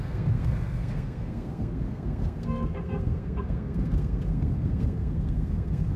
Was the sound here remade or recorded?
remade